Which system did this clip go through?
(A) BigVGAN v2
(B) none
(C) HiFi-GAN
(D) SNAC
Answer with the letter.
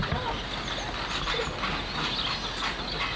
B